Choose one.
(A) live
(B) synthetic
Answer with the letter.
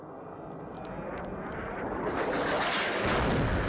A